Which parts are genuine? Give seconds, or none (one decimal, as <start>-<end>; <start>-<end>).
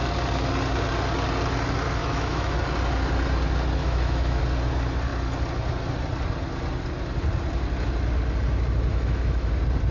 0.0-2.0; 2.6-3.8; 4.4-8.9; 9.5-9.9